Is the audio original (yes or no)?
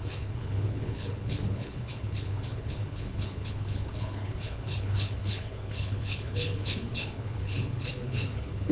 no